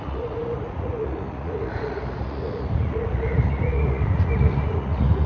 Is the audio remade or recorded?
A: remade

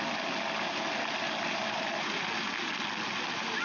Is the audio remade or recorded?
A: recorded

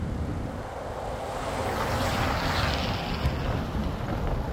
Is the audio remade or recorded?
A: recorded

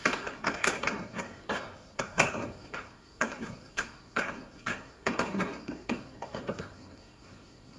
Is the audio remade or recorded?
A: remade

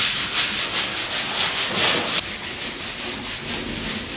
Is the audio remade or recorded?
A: recorded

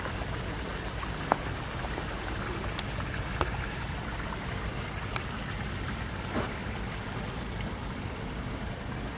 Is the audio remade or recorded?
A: recorded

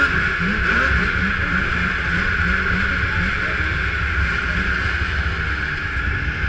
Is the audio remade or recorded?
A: recorded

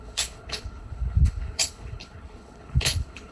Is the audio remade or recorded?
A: remade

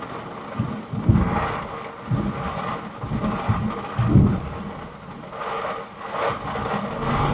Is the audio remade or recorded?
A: recorded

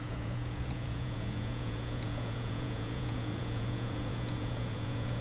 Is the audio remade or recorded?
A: remade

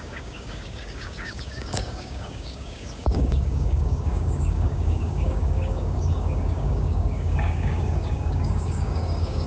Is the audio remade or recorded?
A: remade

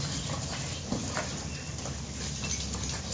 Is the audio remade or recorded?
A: recorded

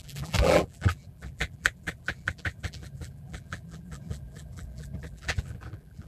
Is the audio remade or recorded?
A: remade